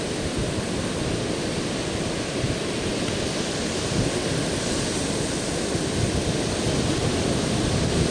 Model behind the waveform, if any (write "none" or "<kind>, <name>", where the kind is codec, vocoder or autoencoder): none